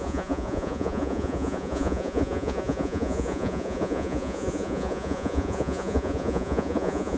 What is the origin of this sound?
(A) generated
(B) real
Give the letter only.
A